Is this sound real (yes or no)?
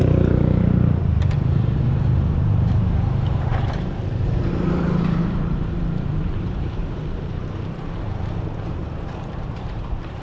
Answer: no